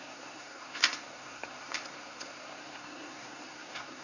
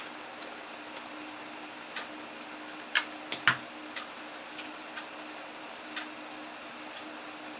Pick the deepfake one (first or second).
first